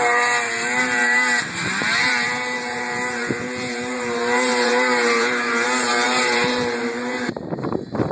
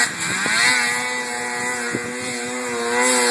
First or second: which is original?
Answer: second